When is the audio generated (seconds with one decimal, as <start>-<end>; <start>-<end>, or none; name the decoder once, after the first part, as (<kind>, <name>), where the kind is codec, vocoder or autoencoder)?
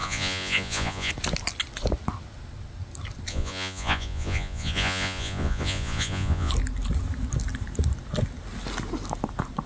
0.0-1.1 (vocoder, Vocos); 3.3-6.5